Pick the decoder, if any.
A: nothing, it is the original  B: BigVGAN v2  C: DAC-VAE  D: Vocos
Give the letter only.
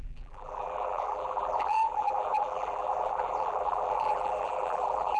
B